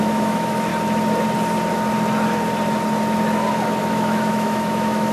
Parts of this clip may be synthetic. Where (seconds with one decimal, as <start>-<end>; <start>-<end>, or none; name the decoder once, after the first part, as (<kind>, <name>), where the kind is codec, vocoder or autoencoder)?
0.0-0.7 (autoencoder, DAC-VAE); 3.8-5.1

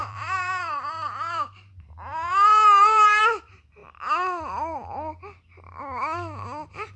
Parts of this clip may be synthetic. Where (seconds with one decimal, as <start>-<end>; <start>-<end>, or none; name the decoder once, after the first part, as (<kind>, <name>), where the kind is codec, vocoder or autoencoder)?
0.0-3.2 (vocoder, BigVGAN v2)

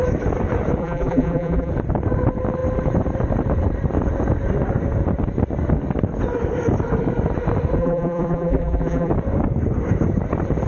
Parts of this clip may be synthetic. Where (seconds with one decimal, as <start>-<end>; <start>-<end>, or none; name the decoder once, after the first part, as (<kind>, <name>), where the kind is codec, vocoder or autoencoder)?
0.8-1.7 (vocoder, BigVGAN v2); 7.8-9.1